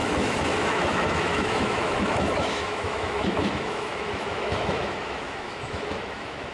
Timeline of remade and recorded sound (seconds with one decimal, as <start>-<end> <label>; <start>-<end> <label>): 0.0-6.5 remade